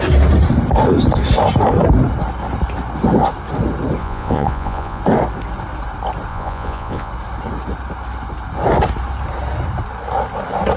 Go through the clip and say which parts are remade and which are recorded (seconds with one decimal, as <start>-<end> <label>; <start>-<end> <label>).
0.0-4.0 recorded; 4.0-5.0 remade; 5.0-6.3 recorded; 6.3-7.1 remade; 7.1-10.8 recorded